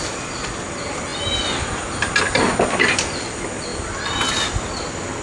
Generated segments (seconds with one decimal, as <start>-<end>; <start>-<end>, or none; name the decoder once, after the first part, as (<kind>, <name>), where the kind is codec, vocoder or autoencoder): none